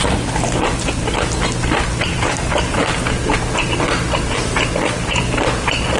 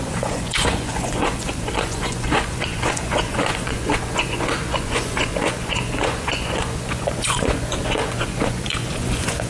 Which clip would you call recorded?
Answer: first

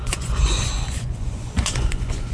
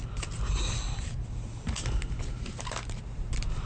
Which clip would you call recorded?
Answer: second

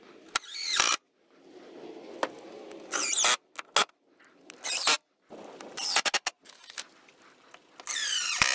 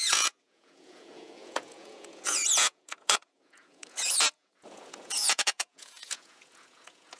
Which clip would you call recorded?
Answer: first